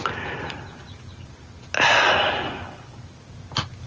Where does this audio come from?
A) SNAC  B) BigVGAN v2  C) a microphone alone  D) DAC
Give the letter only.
C